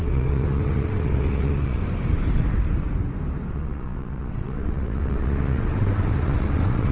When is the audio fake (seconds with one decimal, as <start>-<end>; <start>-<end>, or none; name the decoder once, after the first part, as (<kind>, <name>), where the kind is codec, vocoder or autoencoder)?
0.0-1.8 (vocoder, WaveNeXt); 3.5-6.9